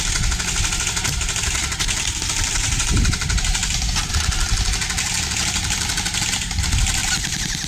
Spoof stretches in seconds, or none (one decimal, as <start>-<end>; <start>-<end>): 1.6-4.1; 7.0-7.7